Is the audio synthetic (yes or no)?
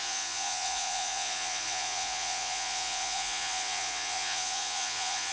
yes